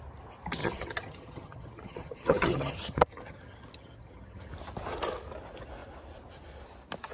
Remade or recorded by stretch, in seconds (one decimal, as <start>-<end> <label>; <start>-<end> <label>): 0.0-0.6 recorded; 0.6-4.5 remade; 4.5-7.1 recorded